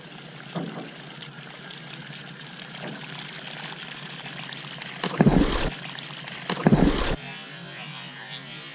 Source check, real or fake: real